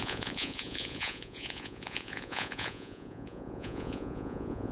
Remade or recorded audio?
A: remade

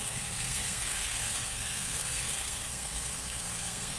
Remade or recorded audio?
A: remade